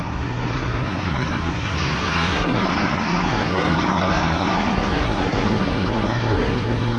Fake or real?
fake